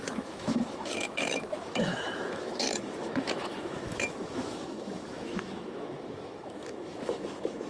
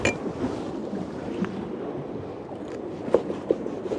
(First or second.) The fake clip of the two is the first